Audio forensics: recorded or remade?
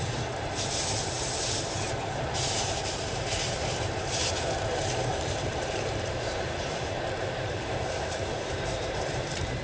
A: remade